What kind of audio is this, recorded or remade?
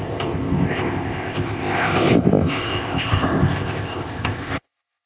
remade